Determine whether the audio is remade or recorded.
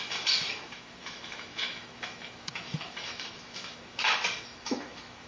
remade